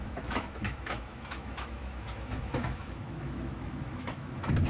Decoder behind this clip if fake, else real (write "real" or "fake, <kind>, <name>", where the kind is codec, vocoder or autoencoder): fake, autoencoder, DAC-VAE